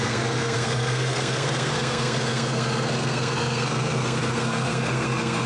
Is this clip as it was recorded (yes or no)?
no